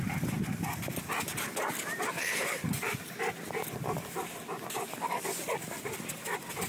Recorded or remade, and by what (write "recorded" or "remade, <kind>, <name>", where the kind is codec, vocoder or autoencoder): recorded